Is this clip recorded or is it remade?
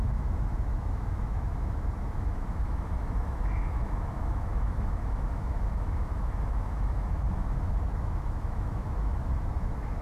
remade